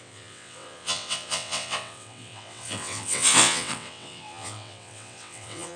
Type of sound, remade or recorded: remade